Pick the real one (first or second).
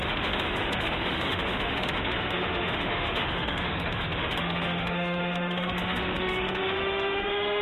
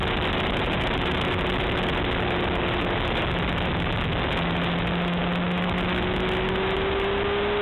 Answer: second